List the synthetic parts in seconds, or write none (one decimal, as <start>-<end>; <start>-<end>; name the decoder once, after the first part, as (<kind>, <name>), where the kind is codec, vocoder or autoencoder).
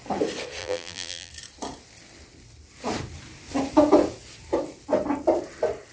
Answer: 0.6-1.3 (vocoder, BigVGAN v2)